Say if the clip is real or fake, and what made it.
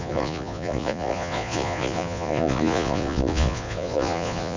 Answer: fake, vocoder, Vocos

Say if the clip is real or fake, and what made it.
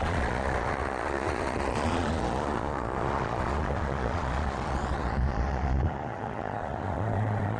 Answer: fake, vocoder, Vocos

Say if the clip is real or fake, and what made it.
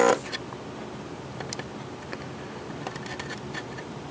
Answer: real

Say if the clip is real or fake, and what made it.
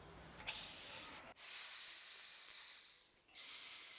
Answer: real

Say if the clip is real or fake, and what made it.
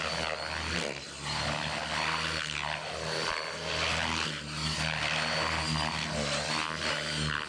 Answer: real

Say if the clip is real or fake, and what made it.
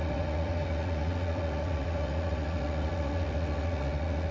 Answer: fake, vocoder, Vocos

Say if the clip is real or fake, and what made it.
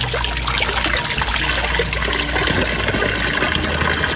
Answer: real